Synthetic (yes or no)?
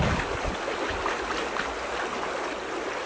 no